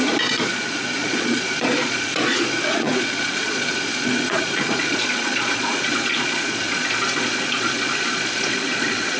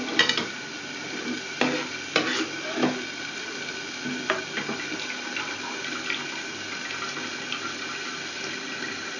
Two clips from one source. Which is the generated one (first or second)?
first